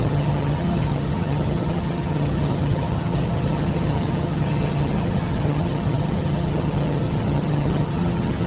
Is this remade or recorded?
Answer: remade